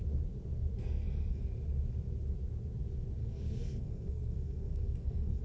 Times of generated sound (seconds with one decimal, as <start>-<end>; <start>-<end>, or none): 0.8-1.4; 3.2-5.4